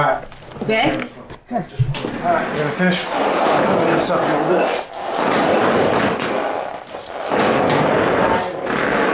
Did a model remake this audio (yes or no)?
no